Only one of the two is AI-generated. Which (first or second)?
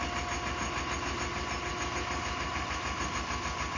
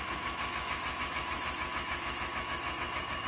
second